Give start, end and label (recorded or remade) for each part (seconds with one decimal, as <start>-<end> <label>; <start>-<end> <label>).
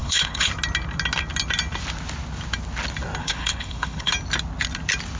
0.0-0.5 remade; 0.5-3.2 recorded; 3.2-4.1 remade; 4.1-5.2 recorded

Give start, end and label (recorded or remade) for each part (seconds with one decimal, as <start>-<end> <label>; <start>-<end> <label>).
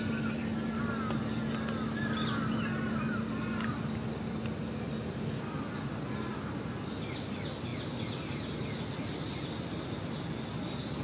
0.0-11.0 recorded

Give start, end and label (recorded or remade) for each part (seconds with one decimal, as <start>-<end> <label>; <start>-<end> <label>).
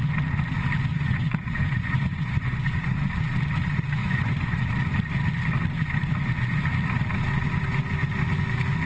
0.0-0.9 recorded; 0.9-2.9 remade; 2.9-4.0 recorded; 4.0-4.6 remade; 4.6-8.9 recorded